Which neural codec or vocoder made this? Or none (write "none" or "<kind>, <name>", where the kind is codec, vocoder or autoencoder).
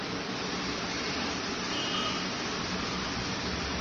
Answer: vocoder, BigVGAN v2